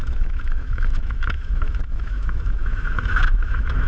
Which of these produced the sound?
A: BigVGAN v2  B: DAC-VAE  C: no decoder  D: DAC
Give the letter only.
B